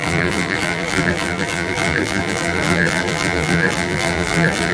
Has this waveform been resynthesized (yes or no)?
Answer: yes